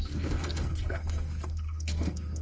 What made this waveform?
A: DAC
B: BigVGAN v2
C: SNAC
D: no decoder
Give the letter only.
C